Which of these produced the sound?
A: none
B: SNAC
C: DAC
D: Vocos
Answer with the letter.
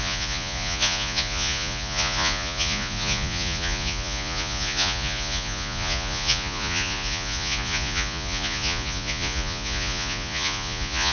D